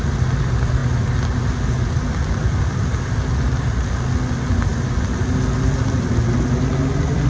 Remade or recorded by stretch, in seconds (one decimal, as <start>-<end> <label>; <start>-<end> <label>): 0.0-7.3 recorded